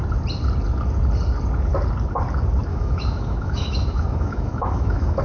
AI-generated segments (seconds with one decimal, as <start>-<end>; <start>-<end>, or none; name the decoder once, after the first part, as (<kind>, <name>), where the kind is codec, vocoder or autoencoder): 2.7-5.2 (autoencoder, DAC-VAE)